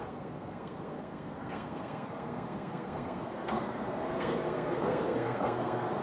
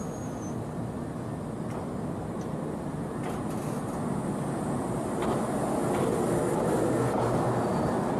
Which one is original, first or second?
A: second